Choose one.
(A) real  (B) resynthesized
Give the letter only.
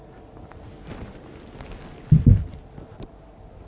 A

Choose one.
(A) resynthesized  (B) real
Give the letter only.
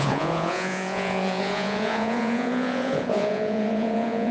A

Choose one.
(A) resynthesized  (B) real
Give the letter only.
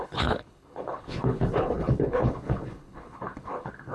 A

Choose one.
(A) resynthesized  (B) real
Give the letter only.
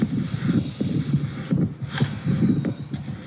B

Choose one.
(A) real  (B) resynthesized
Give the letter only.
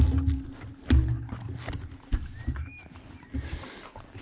A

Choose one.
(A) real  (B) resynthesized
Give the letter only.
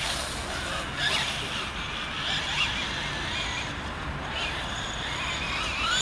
A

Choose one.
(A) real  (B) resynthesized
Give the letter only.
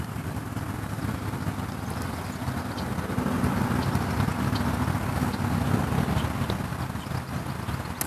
A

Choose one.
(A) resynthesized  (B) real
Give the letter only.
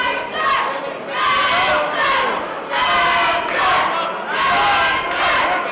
B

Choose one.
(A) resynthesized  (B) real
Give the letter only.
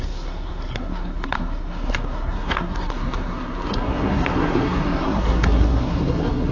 A